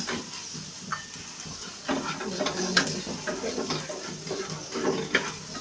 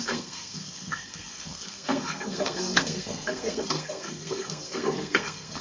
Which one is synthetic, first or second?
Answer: second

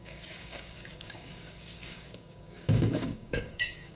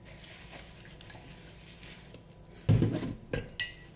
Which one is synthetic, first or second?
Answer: first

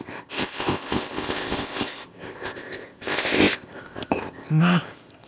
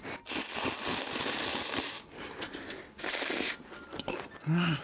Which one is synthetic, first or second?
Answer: first